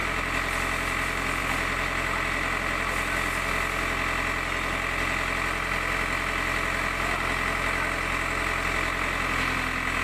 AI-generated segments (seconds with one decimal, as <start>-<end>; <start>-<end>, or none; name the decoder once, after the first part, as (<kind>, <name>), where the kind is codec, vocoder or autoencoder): 0.0-1.4 (vocoder, BigVGAN v2)